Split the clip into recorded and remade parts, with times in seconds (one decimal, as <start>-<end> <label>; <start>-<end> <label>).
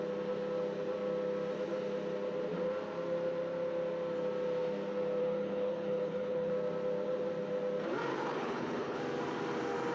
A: 0.0-5.2 recorded; 5.2-6.5 remade; 6.5-8.1 recorded; 8.1-9.0 remade; 9.0-9.9 recorded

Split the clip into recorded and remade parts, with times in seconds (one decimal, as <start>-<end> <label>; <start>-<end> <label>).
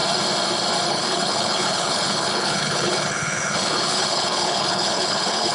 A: 0.0-0.9 recorded; 0.9-5.5 remade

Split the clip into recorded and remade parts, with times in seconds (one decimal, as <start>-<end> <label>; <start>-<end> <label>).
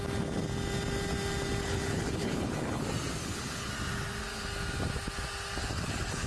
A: 0.0-1.6 recorded; 1.6-2.8 remade; 2.8-3.2 recorded; 3.2-3.7 remade; 3.7-5.6 recorded; 5.6-6.3 remade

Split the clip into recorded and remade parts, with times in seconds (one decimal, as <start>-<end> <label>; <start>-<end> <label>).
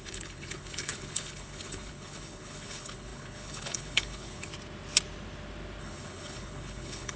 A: 0.0-4.5 remade; 4.5-5.8 recorded; 5.8-7.2 remade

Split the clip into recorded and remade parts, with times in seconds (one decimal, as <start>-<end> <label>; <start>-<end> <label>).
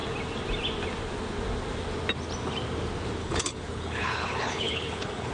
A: 0.0-3.2 recorded; 3.2-5.3 remade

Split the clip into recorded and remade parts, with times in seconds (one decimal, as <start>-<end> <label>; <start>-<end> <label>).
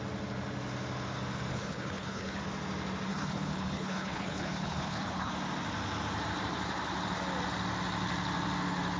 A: 0.0-1.5 recorded; 1.5-2.4 remade; 2.4-3.1 recorded; 3.1-5.3 remade; 5.3-9.0 recorded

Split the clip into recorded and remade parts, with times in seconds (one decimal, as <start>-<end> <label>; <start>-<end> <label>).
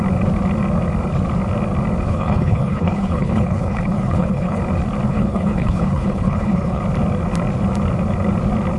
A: 0.0-2.1 recorded; 2.1-4.6 remade; 4.6-5.1 recorded; 5.1-6.8 remade; 6.8-8.8 recorded